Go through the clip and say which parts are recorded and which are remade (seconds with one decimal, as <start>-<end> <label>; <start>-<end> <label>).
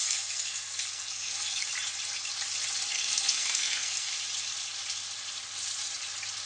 0.0-1.7 remade; 1.7-2.9 recorded; 2.9-4.1 remade; 4.1-6.5 recorded